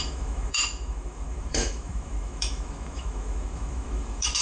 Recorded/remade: remade